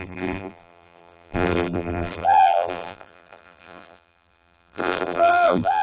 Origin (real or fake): fake